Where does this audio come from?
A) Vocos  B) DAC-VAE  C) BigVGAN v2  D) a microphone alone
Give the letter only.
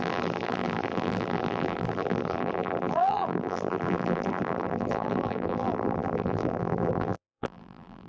C